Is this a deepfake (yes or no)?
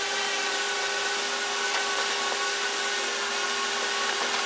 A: no